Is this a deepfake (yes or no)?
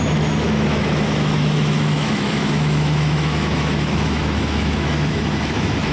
yes